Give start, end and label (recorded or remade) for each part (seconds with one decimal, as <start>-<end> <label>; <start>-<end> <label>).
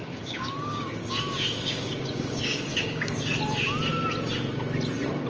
0.0-3.2 remade; 3.2-5.3 recorded